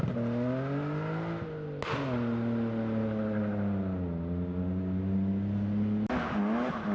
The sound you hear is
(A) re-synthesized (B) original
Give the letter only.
B